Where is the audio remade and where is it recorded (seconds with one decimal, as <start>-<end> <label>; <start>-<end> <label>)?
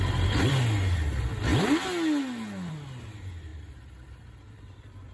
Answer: 0.0-5.1 recorded